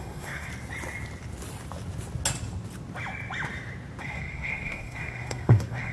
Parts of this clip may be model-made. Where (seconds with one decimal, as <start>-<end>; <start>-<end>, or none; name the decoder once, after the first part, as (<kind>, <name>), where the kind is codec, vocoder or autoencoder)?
0.0-0.5 (codec, SNAC); 4.0-5.9